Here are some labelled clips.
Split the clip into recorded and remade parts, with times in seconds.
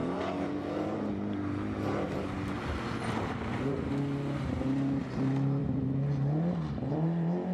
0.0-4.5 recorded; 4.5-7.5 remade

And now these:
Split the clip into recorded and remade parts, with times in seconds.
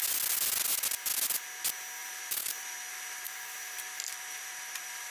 0.0-2.0 recorded; 2.0-5.1 remade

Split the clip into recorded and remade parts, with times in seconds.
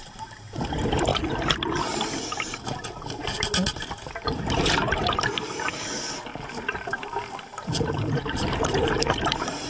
0.0-1.1 remade; 1.1-2.3 recorded; 2.3-9.7 remade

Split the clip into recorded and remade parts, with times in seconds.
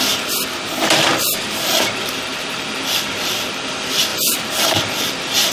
0.0-1.1 recorded; 1.1-3.5 remade; 3.5-4.1 recorded; 4.1-5.5 remade